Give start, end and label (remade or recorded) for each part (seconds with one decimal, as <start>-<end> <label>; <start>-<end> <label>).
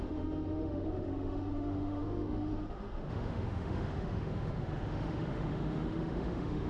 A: 0.0-6.7 remade